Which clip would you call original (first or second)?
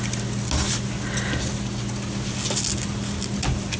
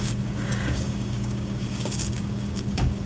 first